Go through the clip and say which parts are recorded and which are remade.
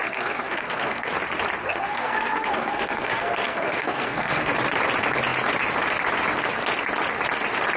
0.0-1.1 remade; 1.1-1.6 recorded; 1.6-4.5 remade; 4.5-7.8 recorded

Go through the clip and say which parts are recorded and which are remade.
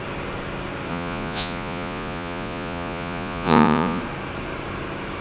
0.0-0.9 recorded; 0.9-4.0 remade; 4.0-5.2 recorded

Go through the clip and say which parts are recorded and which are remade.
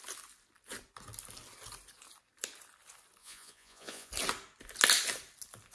0.0-3.2 recorded; 3.2-4.1 remade; 4.1-5.7 recorded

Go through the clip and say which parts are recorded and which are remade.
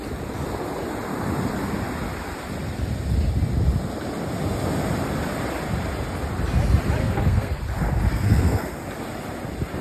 0.0-7.0 recorded; 7.0-7.6 remade; 7.6-8.1 recorded; 8.1-8.7 remade; 8.7-9.8 recorded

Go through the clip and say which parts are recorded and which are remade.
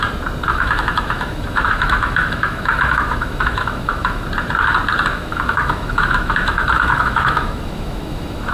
0.0-0.5 recorded; 0.5-4.3 remade; 4.3-5.1 recorded; 5.1-8.5 remade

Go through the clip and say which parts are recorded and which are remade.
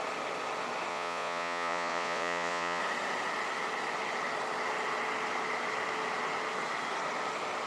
0.0-0.9 recorded; 0.9-2.8 remade; 2.8-7.7 recorded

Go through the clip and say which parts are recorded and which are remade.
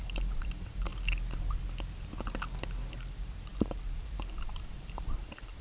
0.0-0.9 remade; 0.9-2.9 recorded; 2.9-5.6 remade